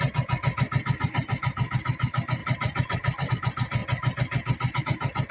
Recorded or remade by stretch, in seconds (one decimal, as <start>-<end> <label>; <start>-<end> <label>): 0.0-2.4 recorded; 2.4-3.3 remade; 3.3-5.3 recorded